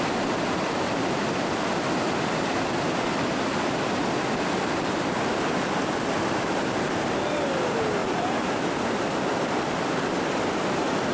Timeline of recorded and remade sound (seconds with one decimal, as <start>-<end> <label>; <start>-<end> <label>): 0.0-8.0 remade; 8.0-9.7 recorded; 9.7-11.1 remade